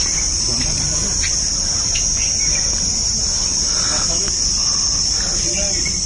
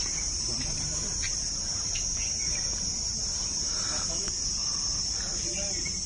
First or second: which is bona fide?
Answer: first